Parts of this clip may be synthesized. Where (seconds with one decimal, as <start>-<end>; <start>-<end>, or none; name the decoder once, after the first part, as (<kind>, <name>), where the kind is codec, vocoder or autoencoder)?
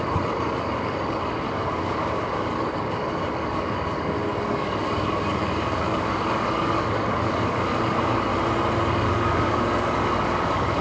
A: 0.0-8.3 (codec, DAC); 8.9-10.8